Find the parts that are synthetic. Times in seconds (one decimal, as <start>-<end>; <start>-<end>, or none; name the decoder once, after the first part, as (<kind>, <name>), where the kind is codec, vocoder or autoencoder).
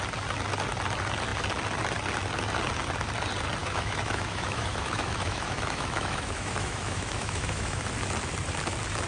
3.6-7.8 (autoencoder, DAC-VAE)